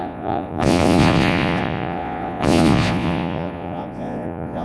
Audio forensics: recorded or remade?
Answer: remade